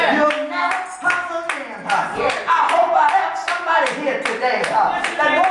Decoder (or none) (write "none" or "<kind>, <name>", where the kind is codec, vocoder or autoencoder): none